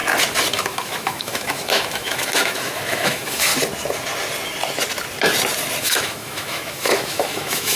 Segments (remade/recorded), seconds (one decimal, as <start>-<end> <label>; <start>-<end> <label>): 0.0-0.5 recorded; 0.5-3.5 remade; 3.5-5.8 recorded; 5.8-7.8 remade